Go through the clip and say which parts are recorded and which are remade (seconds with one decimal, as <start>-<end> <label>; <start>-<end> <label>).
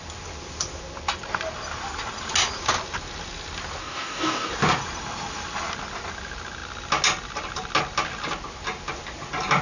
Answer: 0.0-3.8 recorded; 3.8-4.5 remade; 4.5-9.6 recorded